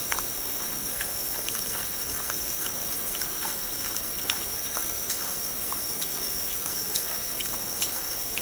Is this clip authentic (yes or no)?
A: no